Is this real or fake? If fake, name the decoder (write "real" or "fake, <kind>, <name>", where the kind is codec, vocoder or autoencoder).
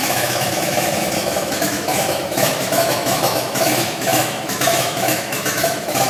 fake, autoencoder, DAC-VAE